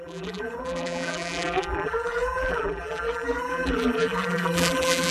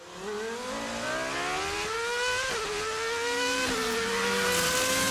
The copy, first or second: first